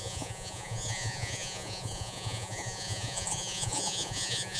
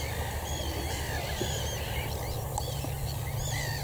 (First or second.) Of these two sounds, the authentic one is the second